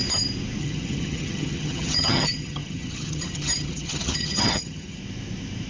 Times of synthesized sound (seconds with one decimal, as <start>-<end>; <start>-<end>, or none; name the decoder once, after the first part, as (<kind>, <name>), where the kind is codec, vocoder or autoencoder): 0.6-5.0 (vocoder, HiFi-GAN)